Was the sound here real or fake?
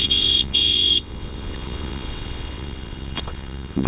fake